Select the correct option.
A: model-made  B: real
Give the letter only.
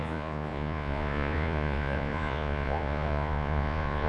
A